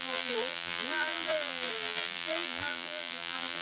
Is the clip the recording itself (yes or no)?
no